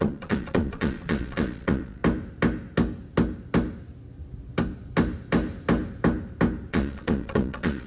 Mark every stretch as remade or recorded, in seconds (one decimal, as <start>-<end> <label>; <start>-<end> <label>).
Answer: 0.0-2.0 remade; 2.0-6.7 recorded; 6.7-7.9 remade